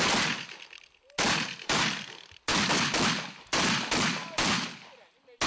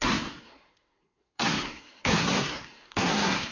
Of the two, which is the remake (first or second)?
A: second